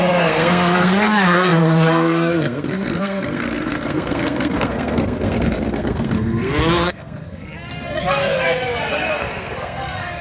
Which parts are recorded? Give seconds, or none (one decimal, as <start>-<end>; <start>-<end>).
none